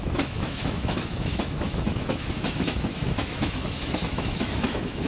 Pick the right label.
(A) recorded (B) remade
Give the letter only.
B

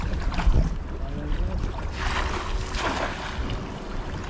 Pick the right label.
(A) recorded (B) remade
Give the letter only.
A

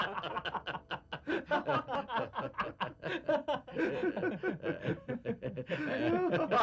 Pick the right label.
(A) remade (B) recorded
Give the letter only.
B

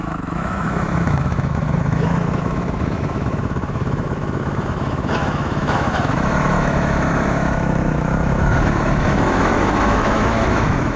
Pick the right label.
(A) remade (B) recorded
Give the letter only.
A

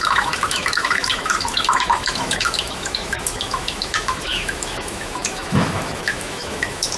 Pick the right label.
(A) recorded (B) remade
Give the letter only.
B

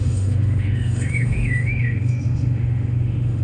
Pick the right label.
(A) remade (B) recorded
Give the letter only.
A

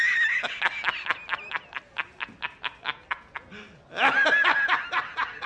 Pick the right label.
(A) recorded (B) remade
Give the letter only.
A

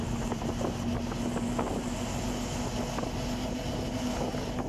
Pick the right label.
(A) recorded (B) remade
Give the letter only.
A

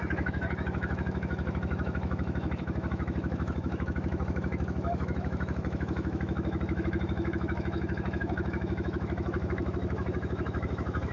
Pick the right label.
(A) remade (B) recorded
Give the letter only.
A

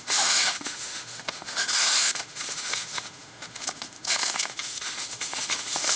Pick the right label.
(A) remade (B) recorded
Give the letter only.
A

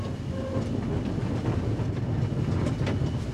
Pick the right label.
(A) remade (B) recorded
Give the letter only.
B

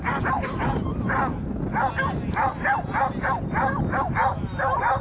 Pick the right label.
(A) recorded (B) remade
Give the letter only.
A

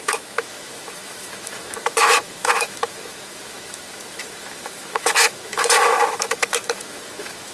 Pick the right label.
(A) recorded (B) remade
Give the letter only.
B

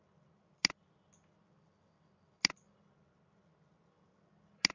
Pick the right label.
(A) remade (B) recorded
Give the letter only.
B